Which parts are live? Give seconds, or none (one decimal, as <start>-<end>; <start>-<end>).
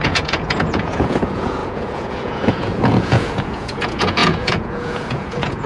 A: none